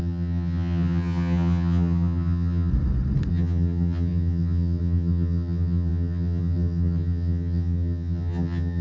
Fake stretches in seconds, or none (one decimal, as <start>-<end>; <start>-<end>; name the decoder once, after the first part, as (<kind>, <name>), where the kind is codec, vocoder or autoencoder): 0.0-2.7 (vocoder, HiFi-GAN); 3.3-8.8